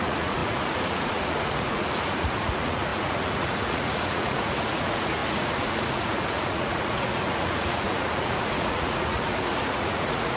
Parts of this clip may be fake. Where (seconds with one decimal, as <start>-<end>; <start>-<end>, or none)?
0.0-10.4